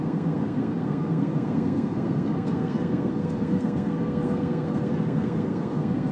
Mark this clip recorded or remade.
remade